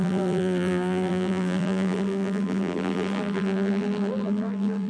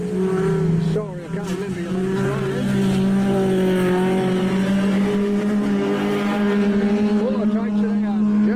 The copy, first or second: first